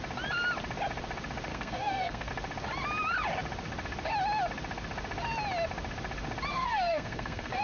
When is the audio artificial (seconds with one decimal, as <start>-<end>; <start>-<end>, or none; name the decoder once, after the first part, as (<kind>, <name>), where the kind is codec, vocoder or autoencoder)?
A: 1.5-2.3 (codec, SNAC); 6.5-7.6